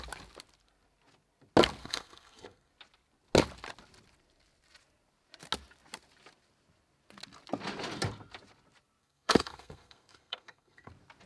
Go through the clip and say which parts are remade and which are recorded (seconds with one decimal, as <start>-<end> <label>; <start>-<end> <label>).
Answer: 0.0-1.8 recorded; 1.8-2.7 remade; 2.7-9.0 recorded; 9.0-10.9 remade; 10.9-11.3 recorded